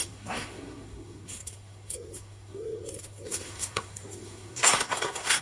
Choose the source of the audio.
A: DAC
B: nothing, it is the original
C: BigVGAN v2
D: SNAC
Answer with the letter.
D